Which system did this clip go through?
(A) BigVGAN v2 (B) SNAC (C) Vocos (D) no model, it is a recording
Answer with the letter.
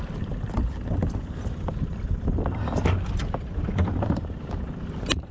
D